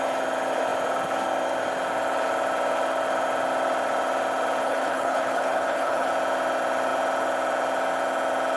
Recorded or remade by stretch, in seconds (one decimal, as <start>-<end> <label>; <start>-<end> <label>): 0.0-4.6 recorded; 4.6-6.1 remade; 6.1-8.6 recorded